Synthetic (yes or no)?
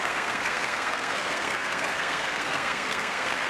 yes